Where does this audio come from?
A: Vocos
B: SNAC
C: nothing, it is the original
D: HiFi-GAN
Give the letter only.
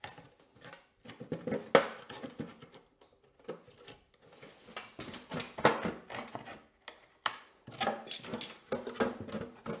C